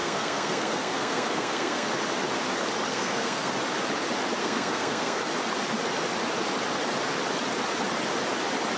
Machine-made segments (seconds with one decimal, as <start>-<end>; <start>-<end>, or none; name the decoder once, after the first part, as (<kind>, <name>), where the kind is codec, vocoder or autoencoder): 0.0-1.9 (codec, SNAC); 2.9-3.5; 4.4-5.2